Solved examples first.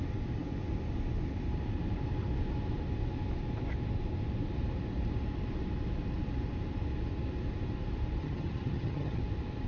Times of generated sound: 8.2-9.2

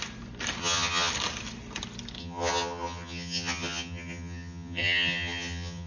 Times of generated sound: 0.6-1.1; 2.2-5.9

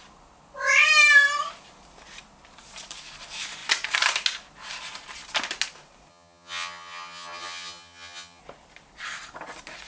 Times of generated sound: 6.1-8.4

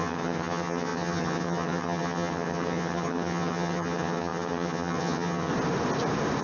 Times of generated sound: 0.0-5.5

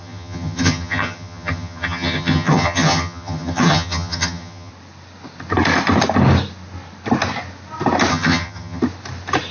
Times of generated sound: 0.0-4.7; 8.1-8.8